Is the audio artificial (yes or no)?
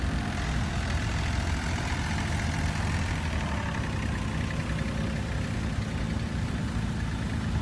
no